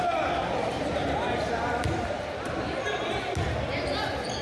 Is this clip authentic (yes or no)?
yes